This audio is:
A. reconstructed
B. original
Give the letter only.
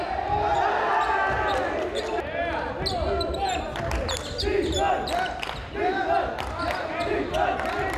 B